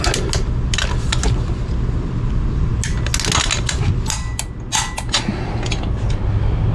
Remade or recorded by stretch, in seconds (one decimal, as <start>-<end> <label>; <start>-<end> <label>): 0.0-6.7 recorded